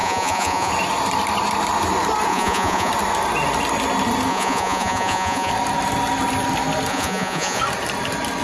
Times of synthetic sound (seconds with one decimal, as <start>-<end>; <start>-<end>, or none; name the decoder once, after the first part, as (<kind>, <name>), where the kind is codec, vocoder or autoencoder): 0.0-0.7 (vocoder, Vocos); 2.3-2.9; 4.3-5.5; 6.9-7.6